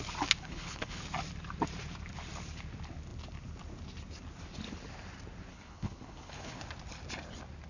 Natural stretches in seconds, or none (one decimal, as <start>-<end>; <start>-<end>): 0.0-0.4; 1.0-5.5; 6.6-7.7